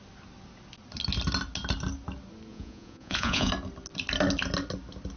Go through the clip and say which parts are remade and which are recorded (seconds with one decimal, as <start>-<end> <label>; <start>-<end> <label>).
0.0-2.5 recorded; 2.5-3.5 remade; 3.5-5.2 recorded